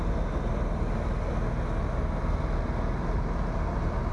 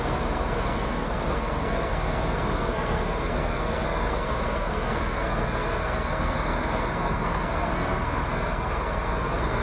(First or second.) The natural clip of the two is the first